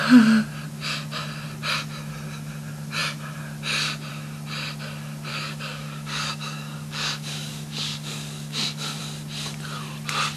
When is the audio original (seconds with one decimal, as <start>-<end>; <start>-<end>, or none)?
0.0-5.3; 9.0-10.4